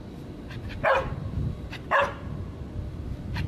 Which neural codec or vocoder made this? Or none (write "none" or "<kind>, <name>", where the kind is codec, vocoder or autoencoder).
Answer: none